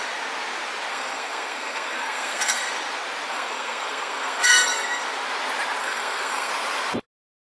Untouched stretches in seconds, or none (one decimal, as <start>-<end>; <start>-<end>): 0.0-0.9; 2.6-3.3; 5.0-5.8; 6.5-7.4